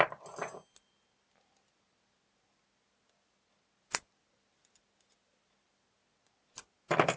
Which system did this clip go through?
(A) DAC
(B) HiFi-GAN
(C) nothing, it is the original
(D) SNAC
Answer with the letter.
C